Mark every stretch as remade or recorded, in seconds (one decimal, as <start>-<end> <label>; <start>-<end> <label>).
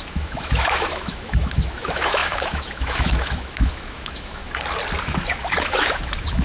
0.0-4.4 remade; 4.4-5.0 recorded; 5.0-6.4 remade